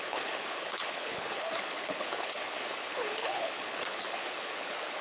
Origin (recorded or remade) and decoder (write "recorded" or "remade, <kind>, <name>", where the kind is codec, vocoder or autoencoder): remade, codec, HILCodec